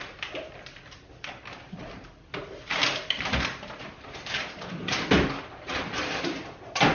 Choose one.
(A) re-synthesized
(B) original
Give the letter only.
B